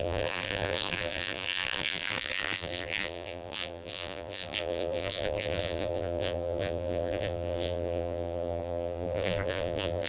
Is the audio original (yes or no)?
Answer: no